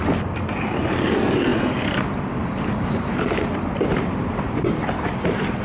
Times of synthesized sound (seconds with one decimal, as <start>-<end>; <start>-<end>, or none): 1.5-4.9